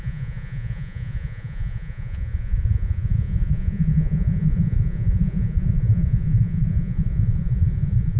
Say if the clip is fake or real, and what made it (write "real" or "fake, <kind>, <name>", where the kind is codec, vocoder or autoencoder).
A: fake, vocoder, Vocos